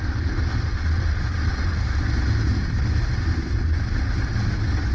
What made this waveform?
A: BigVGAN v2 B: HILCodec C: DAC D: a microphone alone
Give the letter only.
D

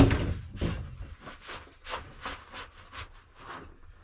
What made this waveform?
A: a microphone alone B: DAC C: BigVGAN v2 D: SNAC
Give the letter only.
A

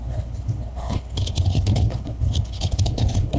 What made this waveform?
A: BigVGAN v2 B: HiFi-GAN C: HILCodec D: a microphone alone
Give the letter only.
C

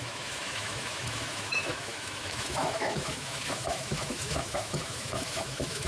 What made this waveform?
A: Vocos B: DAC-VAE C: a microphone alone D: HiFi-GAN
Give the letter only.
B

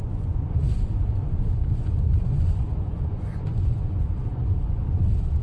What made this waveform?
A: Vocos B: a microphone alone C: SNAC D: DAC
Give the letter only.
A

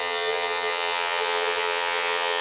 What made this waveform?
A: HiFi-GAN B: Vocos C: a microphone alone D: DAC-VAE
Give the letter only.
A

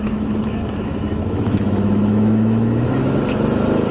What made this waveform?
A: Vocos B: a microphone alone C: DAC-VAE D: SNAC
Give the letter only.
C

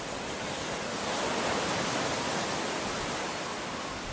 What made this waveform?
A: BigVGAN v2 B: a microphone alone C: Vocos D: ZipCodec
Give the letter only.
B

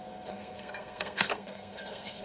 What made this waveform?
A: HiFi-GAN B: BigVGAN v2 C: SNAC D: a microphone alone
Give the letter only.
C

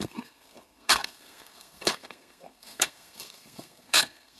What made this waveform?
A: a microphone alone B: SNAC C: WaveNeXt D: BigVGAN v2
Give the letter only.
B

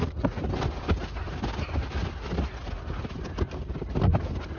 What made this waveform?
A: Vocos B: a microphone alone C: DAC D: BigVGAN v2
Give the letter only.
B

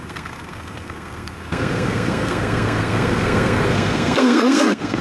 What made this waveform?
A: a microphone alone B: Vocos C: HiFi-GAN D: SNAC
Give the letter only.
D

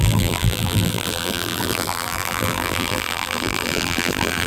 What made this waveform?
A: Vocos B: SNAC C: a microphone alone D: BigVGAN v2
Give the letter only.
D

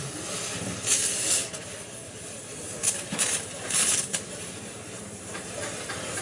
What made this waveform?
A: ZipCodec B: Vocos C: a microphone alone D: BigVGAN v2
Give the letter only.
D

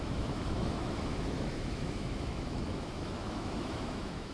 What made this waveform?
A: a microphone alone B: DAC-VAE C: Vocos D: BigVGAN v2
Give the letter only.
B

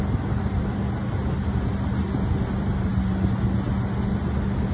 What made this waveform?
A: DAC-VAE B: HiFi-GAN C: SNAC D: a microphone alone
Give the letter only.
D